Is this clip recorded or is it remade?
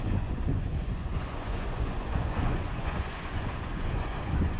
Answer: remade